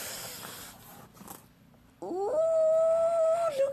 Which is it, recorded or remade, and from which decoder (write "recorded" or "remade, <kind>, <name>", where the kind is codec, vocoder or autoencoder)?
recorded